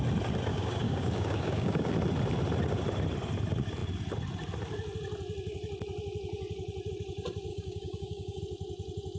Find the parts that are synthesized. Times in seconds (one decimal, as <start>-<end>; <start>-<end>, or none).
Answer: 0.5-1.9; 7.5-8.4